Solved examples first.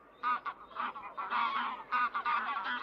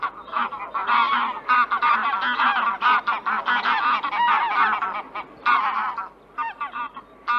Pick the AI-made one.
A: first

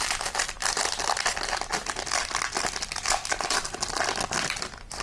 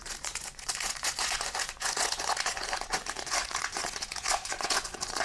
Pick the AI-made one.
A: second